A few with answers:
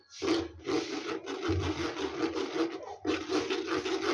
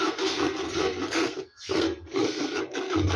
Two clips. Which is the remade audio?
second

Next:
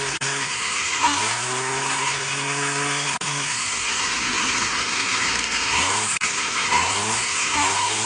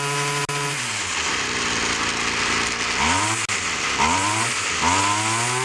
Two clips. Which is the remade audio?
first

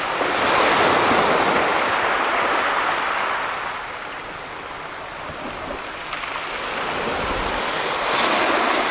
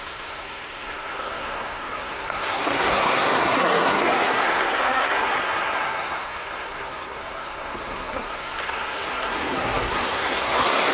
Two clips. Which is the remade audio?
second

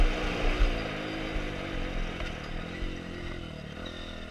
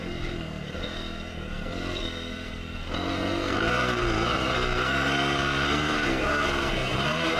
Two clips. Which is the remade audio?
second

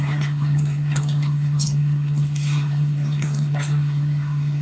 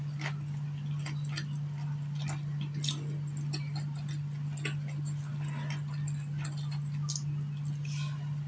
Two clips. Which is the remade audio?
first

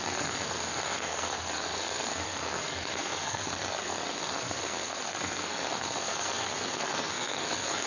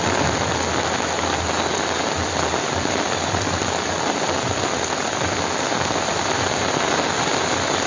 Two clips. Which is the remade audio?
first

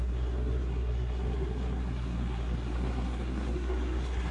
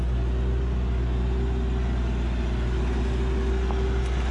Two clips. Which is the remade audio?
first